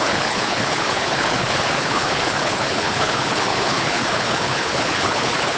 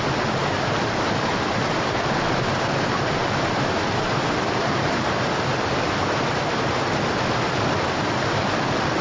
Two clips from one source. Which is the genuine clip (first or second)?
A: second